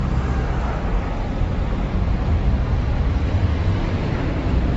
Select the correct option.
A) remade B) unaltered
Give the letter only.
B